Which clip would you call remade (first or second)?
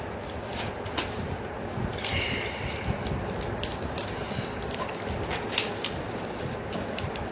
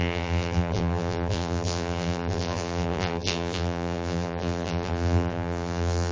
second